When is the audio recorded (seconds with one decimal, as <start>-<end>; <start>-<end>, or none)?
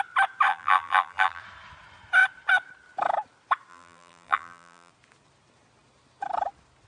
0.0-0.5; 1.4-3.7; 4.9-6.9